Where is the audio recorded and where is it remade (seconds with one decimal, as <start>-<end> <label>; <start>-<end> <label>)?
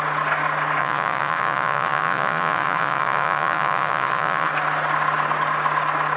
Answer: 0.0-0.8 recorded; 0.8-4.5 remade; 4.5-6.2 recorded